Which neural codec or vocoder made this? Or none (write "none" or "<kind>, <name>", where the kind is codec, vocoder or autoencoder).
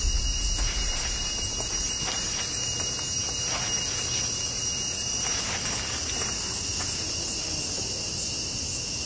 none